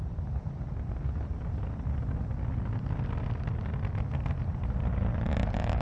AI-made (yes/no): no